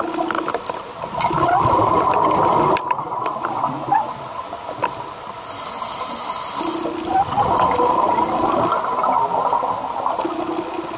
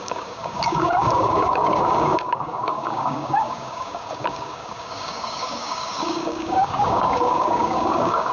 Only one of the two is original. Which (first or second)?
first